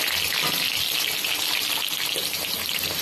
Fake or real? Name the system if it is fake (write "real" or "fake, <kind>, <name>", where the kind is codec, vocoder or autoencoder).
real